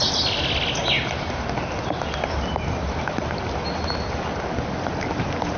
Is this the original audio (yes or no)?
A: yes